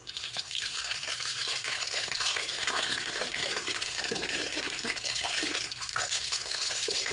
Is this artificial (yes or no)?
yes